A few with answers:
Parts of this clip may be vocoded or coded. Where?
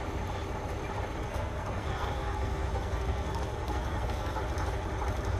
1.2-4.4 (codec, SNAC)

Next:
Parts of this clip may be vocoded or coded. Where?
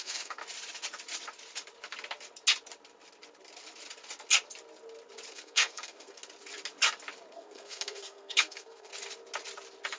0.0-0.4 (codec, SNAC); 5.3-6.2; 7.3-8.9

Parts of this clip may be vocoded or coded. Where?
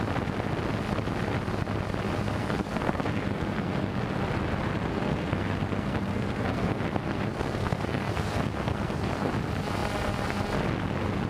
2.4-4.0 (codec, SNAC); 4.9-9.3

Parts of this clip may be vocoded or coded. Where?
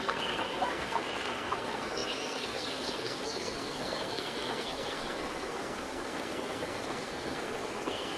0.0-8.2 (codec, SNAC)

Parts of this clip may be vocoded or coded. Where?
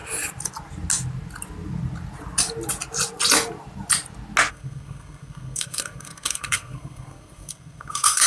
4.5-8.3 (codec, SNAC)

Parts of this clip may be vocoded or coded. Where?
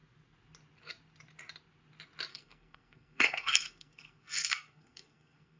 2.3-5.6 (codec, SNAC)